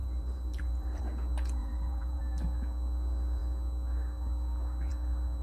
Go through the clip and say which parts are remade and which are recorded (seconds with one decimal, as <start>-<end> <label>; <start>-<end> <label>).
0.0-1.0 remade; 1.0-1.6 recorded; 1.6-2.2 remade; 2.2-5.4 recorded